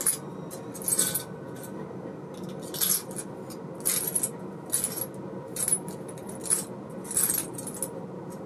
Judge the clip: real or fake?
real